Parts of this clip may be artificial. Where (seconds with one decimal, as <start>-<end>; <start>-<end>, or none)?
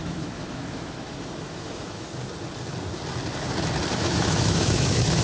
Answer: 0.0-2.1; 3.9-5.2